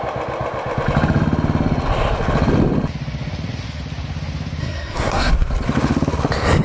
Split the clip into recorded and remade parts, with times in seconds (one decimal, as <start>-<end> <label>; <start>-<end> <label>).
0.0-4.6 recorded; 4.6-5.3 remade; 5.3-6.6 recorded